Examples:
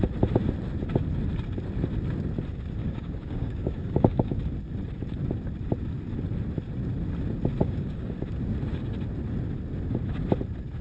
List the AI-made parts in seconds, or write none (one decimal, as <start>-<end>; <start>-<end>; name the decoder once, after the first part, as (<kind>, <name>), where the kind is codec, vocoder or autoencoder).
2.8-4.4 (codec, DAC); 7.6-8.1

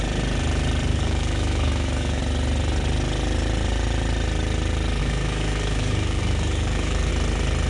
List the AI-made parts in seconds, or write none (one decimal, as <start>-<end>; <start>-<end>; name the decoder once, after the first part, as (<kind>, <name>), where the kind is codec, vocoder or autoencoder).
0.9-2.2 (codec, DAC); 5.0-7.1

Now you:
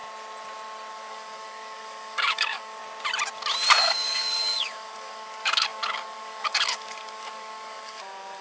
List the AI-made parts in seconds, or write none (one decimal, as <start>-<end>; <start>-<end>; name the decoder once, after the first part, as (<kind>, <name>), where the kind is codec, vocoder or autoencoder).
0.9-2.8 (codec, DAC); 3.8-8.4

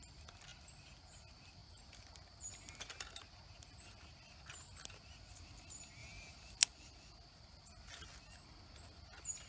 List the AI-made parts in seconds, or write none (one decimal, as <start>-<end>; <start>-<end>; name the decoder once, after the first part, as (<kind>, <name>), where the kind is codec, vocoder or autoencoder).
none

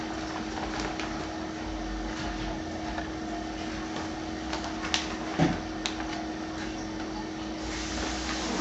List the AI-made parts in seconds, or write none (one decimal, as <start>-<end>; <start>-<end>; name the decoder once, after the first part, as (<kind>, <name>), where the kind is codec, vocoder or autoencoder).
none

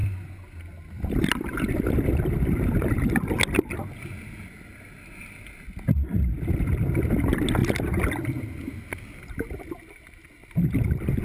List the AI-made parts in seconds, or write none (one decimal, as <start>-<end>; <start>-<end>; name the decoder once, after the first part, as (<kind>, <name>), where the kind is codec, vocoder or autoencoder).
none

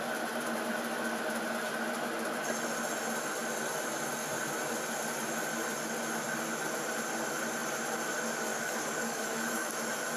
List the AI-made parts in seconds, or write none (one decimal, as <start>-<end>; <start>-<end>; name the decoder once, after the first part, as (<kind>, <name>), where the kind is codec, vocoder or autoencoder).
8.5-9.7 (codec, DAC)

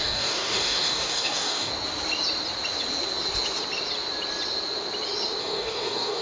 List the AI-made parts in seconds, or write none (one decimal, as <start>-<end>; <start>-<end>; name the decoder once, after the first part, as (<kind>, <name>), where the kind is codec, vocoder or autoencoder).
0.0-1.7 (codec, DAC); 5.4-6.2